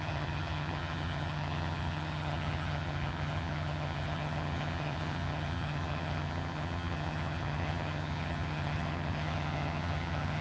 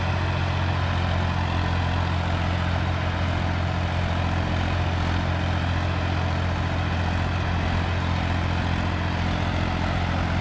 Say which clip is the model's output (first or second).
first